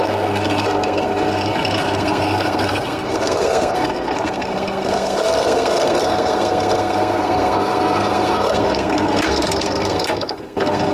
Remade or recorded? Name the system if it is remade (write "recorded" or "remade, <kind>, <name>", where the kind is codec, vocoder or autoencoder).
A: remade, codec, SNAC